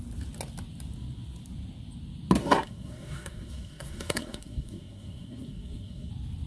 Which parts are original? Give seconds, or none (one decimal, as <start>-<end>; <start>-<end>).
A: 0.0-2.4; 6.1-6.5